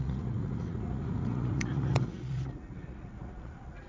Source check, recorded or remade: remade